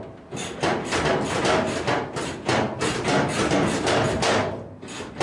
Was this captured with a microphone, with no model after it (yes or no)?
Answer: yes